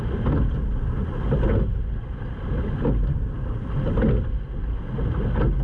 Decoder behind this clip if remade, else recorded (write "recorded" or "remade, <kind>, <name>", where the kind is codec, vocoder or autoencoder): recorded